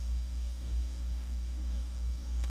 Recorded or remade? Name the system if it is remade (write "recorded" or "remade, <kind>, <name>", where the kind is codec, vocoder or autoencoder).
remade, codec, DAC